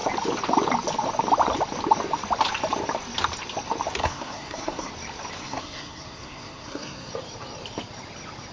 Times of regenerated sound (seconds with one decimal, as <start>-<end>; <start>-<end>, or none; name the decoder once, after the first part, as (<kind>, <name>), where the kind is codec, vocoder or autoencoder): 4.0-4.9 (codec, SNAC); 5.4-7.1